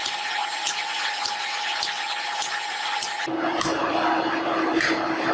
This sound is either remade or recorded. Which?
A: recorded